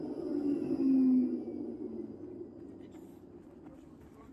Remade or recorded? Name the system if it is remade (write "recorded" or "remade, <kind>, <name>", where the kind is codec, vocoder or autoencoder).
recorded